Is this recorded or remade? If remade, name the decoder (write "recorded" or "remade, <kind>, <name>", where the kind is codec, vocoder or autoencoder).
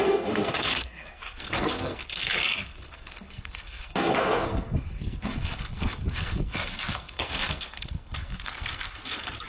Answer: remade, codec, SNAC